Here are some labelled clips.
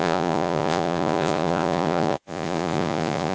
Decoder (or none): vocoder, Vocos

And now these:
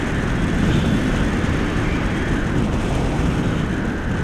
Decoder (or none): none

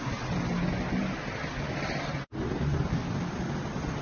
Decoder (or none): none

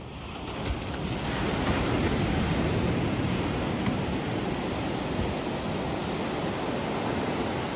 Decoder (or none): none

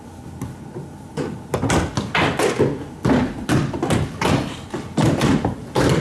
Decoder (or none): none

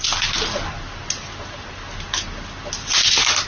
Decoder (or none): none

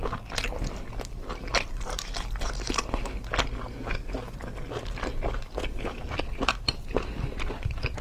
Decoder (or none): none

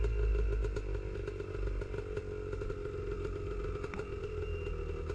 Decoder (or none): none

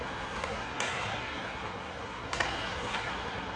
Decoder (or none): codec, SNAC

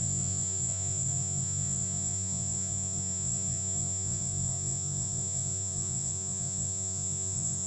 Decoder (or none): vocoder, Vocos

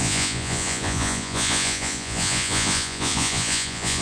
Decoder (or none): vocoder, Vocos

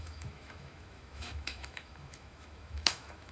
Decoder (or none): autoencoder, DAC-VAE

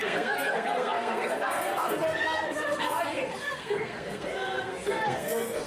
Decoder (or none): codec, SNAC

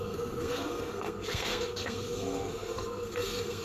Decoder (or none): codec, SNAC